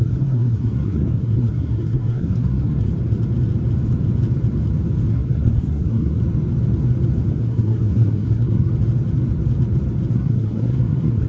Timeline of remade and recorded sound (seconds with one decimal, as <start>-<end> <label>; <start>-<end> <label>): 0.0-2.9 remade; 2.9-5.1 recorded; 5.1-6.2 remade; 6.2-7.3 recorded; 7.3-8.7 remade; 8.7-10.1 recorded; 10.1-11.3 remade